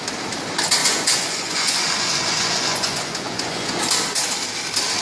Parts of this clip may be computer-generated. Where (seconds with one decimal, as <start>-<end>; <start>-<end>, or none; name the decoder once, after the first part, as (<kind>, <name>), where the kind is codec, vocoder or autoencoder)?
0.8-3.8 (vocoder, Vocos)